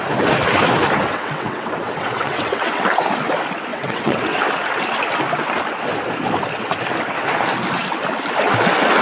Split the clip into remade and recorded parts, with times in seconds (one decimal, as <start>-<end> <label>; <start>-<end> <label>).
0.0-1.1 recorded; 1.1-2.8 remade; 2.8-3.7 recorded; 3.7-4.4 remade; 4.4-9.0 recorded